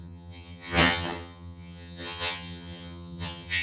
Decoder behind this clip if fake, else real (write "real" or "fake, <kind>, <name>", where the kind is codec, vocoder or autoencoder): fake, vocoder, HiFi-GAN